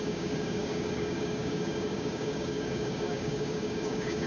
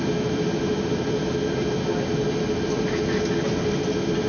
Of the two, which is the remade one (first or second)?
first